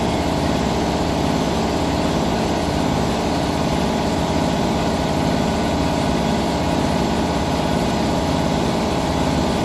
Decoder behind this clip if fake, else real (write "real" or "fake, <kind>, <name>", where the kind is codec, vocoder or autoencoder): real